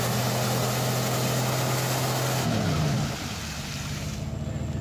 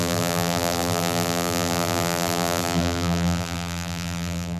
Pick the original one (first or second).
first